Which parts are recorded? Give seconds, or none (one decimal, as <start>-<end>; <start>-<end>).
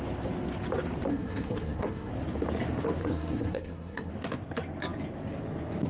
0.0-1.1; 2.1-3.0; 4.1-5.9